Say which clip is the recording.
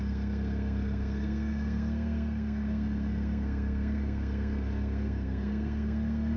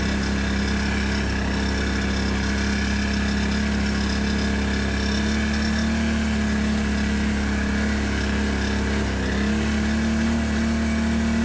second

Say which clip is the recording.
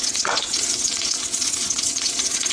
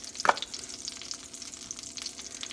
second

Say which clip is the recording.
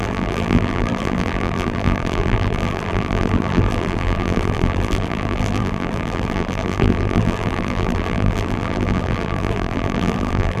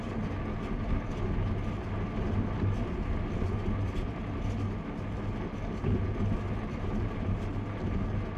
second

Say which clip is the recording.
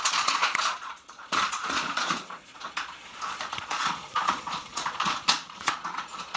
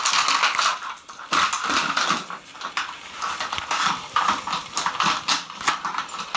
second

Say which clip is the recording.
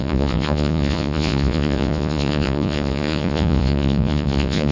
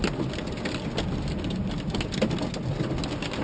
second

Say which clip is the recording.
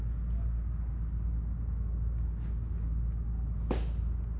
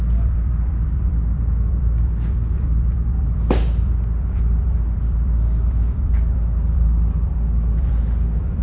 first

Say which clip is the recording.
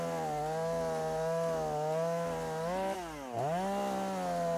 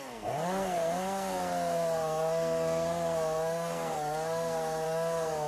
first